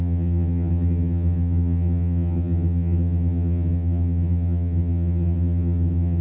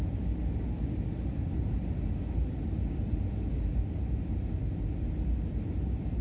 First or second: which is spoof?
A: first